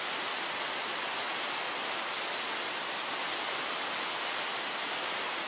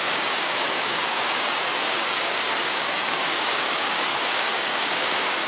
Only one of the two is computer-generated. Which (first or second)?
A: second